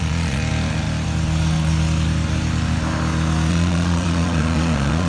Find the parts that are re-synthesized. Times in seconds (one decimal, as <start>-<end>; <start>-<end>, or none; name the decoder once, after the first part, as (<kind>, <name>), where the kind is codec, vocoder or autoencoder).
0.0-0.4 (vocoder, Vocos); 3.5-5.1